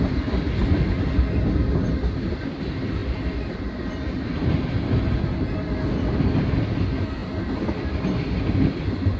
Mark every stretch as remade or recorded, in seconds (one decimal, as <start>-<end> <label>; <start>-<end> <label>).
0.0-9.2 recorded